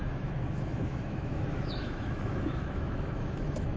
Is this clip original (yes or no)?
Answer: no